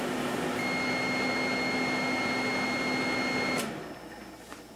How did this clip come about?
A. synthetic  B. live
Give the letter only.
B